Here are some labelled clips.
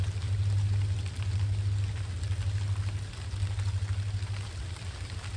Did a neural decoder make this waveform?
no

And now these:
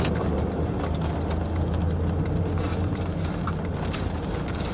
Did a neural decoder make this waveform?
no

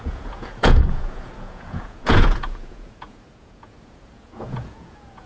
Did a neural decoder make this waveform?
yes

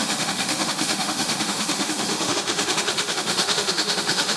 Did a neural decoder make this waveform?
yes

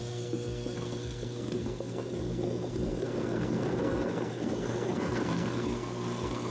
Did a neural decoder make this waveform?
yes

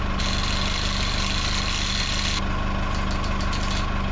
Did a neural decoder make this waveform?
no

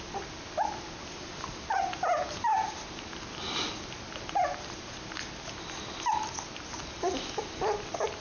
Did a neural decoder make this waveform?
no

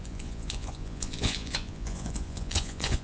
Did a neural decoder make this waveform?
yes